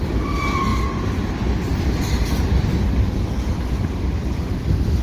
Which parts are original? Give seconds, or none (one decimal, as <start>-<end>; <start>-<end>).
0.7-2.3; 2.7-3.8